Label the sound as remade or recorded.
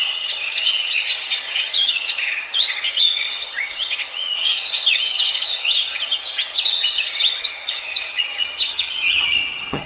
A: remade